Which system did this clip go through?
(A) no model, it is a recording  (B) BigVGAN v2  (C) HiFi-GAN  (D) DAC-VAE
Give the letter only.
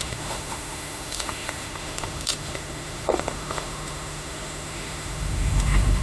D